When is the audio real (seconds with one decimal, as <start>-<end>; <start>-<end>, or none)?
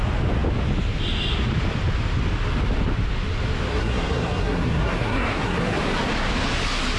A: 0.0-3.7; 5.8-7.0